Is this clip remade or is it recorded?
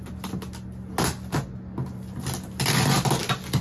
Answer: recorded